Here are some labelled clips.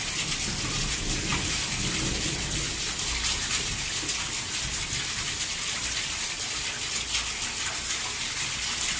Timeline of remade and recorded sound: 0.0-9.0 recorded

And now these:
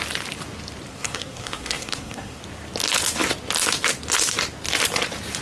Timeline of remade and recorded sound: 0.0-0.9 recorded; 0.9-2.4 remade; 2.4-5.4 recorded

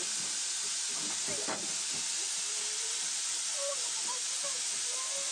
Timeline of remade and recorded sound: 0.0-5.3 recorded

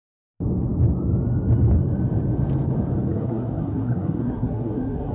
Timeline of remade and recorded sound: 0.0-3.1 recorded; 3.1-5.1 remade

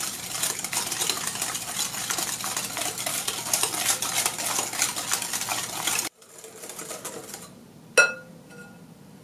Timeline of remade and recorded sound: 0.0-9.2 recorded